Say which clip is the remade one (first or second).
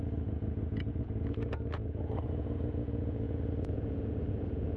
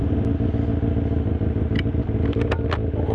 first